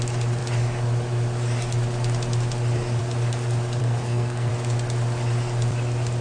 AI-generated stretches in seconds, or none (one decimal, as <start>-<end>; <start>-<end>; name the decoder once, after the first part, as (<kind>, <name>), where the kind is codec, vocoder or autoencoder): 3.8-4.5 (codec, SNAC)